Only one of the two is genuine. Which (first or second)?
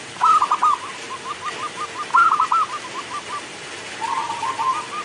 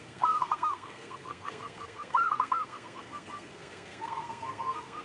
first